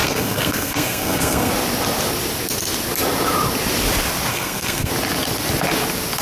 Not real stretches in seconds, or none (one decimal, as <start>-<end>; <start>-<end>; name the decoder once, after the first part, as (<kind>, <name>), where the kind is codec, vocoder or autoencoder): 0.0-1.5 (codec, SNAC); 4.3-4.9